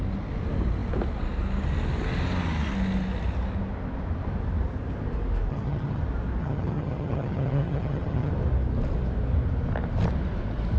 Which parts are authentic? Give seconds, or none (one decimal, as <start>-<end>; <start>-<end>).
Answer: 0.0-5.5; 6.0-6.4; 8.3-10.8